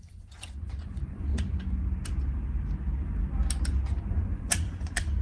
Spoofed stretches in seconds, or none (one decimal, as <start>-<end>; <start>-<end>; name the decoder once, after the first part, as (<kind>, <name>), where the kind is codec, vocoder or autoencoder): 0.0-1.3 (vocoder, Vocos); 4.1-5.2